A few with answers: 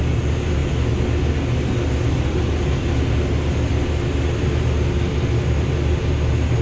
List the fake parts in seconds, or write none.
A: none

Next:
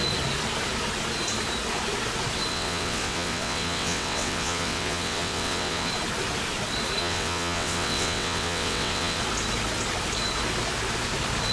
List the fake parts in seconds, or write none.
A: 2.5-5.9; 7.0-9.2

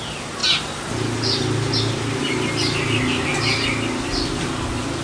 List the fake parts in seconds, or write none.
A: none

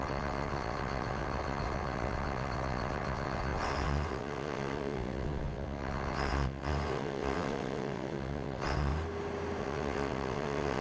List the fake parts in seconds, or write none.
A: 0.0-8.9; 9.6-10.8

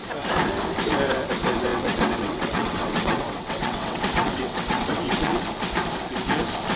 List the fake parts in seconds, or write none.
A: 1.7-5.4

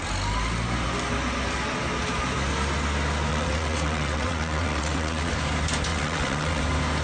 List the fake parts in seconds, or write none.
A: 3.3-5.3; 5.9-6.6

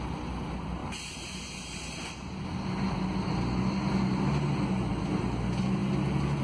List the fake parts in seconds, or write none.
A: none

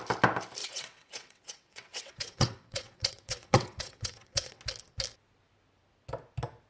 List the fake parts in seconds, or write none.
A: 0.6-4.6